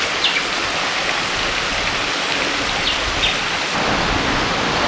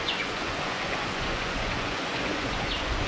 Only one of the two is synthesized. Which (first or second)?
second